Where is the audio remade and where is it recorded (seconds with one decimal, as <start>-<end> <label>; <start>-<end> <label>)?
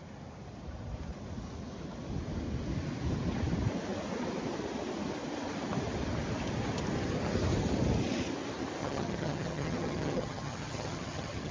0.0-8.8 recorded; 8.8-11.5 remade